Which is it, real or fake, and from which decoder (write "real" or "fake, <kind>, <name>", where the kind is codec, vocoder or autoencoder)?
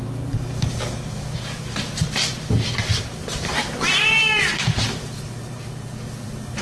fake, vocoder, BigVGAN v2